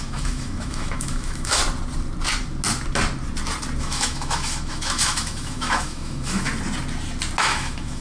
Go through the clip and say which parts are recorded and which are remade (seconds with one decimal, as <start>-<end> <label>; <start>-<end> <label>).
0.0-1.6 remade; 1.6-3.8 recorded; 3.8-6.5 remade; 6.5-7.4 recorded; 7.4-8.0 remade